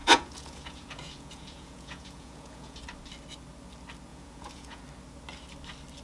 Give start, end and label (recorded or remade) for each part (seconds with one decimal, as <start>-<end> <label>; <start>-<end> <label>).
0.0-2.8 remade; 2.8-4.1 recorded; 4.1-4.8 remade; 4.8-6.0 recorded